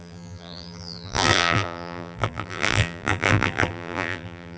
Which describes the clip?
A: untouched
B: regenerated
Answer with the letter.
B